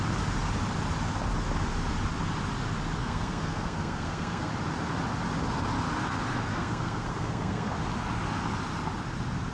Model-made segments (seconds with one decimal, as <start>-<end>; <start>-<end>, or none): 3.0-4.5; 6.5-7.7